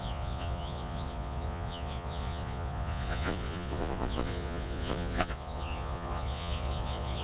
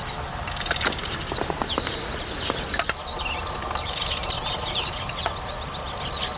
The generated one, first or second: first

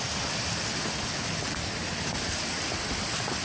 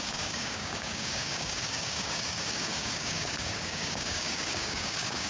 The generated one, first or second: second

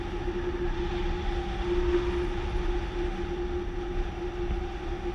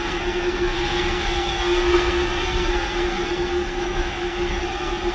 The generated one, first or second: second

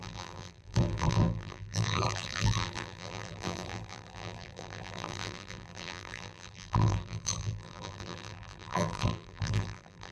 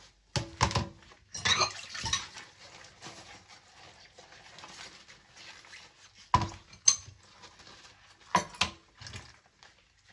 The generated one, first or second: first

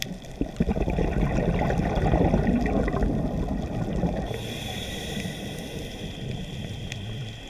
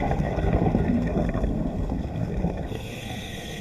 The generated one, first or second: second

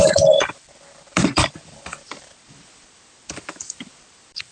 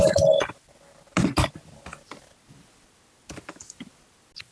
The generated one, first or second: first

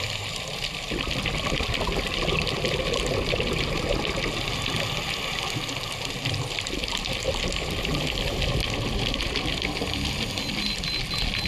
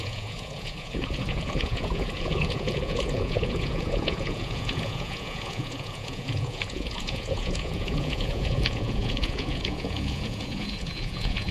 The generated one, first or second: second